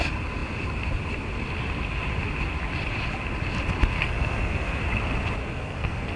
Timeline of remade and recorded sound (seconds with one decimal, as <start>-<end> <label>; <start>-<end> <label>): 0.0-3.9 recorded; 3.9-4.8 remade; 4.8-5.4 recorded; 5.4-6.2 remade